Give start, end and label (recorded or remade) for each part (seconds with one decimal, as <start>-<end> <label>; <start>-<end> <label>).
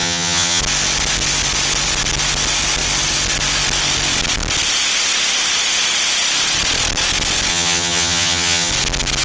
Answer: 0.0-0.6 remade; 0.6-7.5 recorded; 7.5-8.7 remade; 8.7-9.2 recorded